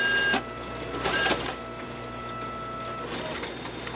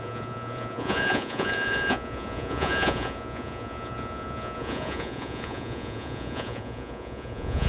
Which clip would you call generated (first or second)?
second